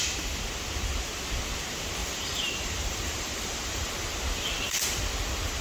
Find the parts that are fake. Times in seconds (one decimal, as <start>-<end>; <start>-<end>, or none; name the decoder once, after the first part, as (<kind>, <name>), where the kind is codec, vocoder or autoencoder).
2.0-3.9 (vocoder, BigVGAN v2)